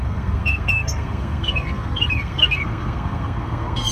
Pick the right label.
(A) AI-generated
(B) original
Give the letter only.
A